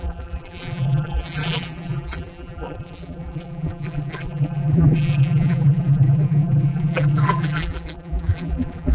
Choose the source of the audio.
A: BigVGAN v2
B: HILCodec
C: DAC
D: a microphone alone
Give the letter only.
A